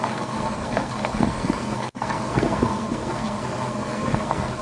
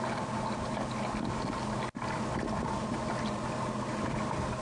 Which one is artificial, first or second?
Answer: first